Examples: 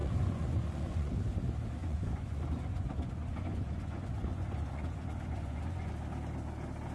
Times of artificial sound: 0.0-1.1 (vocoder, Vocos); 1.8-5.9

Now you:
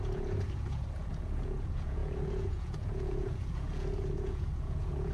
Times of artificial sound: 0.0-5.1 (vocoder, Vocos)